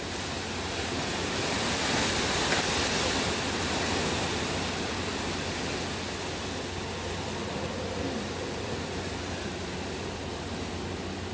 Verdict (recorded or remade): recorded